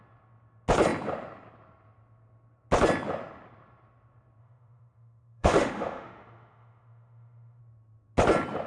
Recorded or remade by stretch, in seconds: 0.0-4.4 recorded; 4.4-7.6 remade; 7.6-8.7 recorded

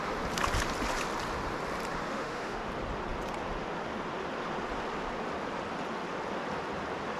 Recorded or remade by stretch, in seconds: 0.0-2.1 recorded; 2.1-2.7 remade; 2.7-7.2 recorded

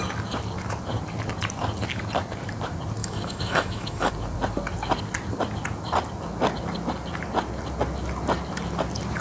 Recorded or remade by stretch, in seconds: 0.0-3.0 recorded; 3.0-4.1 remade; 4.1-9.2 recorded

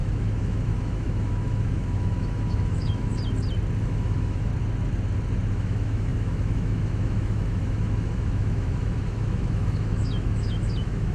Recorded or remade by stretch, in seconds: 0.0-3.1 remade; 3.1-3.8 recorded; 3.8-4.5 remade; 4.5-5.5 recorded; 5.5-11.1 remade

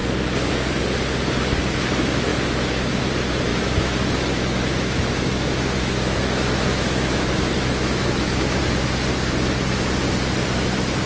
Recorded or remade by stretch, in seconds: 0.0-3.5 recorded; 3.5-8.6 remade; 8.6-11.1 recorded